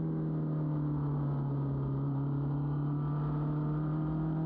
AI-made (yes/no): no